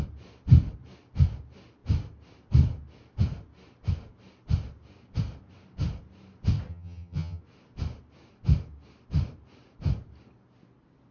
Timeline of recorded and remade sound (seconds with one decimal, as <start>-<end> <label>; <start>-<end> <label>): 0.0-6.7 recorded; 6.7-7.4 remade; 7.4-11.1 recorded